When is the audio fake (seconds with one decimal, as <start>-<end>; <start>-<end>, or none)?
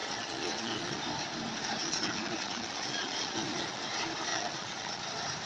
0.0-1.0; 1.8-3.8; 4.3-5.0